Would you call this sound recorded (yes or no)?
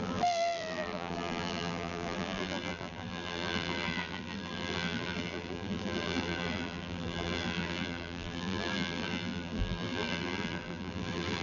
no